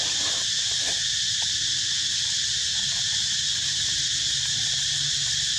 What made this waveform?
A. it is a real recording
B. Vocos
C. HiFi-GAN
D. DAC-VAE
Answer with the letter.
A